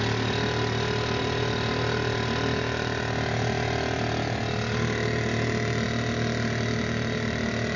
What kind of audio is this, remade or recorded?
recorded